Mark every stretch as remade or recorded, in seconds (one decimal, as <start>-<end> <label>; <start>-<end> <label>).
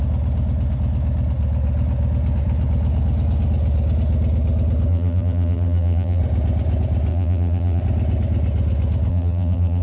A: 0.0-4.9 recorded; 4.9-6.2 remade; 6.2-7.1 recorded; 7.1-7.8 remade; 7.8-9.1 recorded; 9.1-9.8 remade